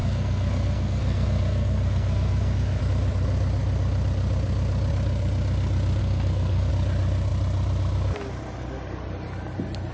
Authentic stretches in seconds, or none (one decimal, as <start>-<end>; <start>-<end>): 2.8-6.0; 6.7-9.9